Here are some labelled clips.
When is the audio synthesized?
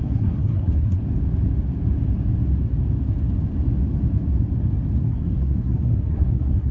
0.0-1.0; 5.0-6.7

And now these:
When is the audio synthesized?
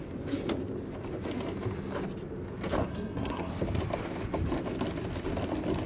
2.8-3.5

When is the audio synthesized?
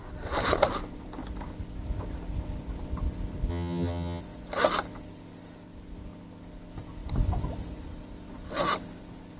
3.5-4.2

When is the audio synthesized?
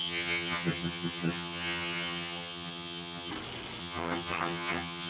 0.0-3.3; 3.8-5.1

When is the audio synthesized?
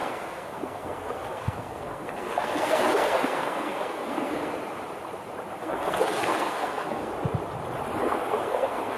0.0-4.5; 5.6-7.1; 8.0-9.0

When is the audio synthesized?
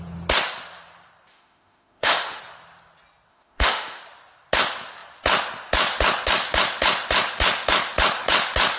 1.3-2.4; 3.3-4.0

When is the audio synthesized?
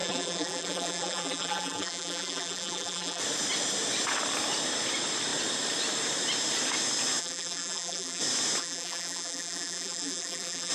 0.0-3.2; 7.2-8.2; 8.6-10.7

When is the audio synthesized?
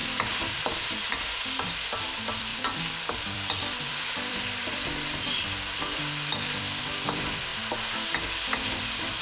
0.0-7.5